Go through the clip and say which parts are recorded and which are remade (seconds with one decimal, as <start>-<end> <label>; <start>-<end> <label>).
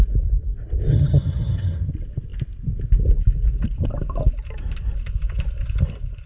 0.0-0.9 recorded; 0.9-1.9 remade; 1.9-6.3 recorded